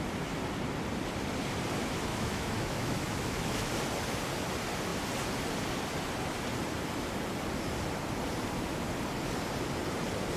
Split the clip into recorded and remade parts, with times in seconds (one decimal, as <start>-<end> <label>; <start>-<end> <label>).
0.0-2.1 recorded; 2.1-3.7 remade; 3.7-10.4 recorded